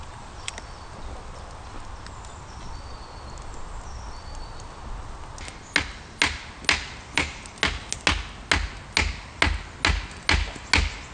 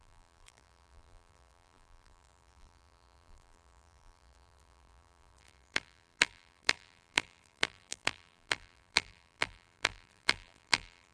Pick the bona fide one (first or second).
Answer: first